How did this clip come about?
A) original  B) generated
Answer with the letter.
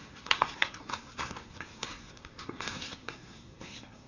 B